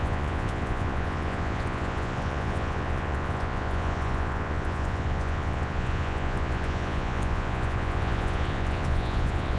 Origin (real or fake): fake